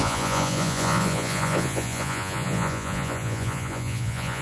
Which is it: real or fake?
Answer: fake